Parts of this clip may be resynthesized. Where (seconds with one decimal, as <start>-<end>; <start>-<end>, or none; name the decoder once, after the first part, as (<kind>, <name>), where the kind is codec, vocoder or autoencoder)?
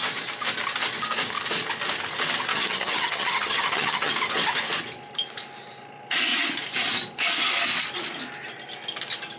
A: 2.5-4.1 (vocoder, HiFi-GAN)